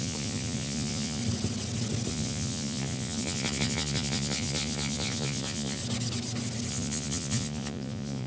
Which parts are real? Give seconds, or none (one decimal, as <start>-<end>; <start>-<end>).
1.2-2.1; 5.8-6.7